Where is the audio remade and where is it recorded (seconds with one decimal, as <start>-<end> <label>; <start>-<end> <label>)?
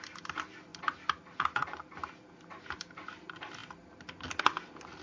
0.0-5.0 recorded